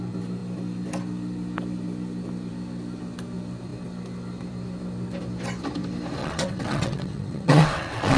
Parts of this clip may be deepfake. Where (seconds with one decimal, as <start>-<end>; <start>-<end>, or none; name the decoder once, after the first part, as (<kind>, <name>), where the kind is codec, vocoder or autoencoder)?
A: 6.2-8.2 (vocoder, WaveNeXt)